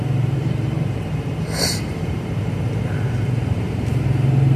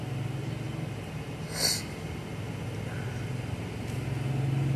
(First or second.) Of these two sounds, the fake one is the first